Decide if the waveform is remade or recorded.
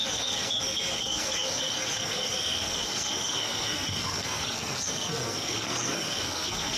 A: remade